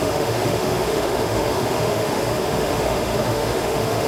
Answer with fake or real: fake